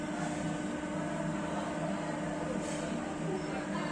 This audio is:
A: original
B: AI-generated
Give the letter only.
A